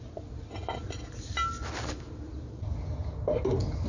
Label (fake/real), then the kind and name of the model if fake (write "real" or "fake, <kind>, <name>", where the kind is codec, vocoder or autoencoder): real